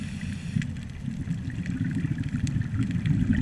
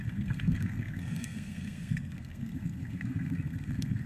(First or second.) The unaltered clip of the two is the first